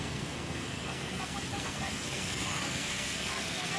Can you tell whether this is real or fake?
fake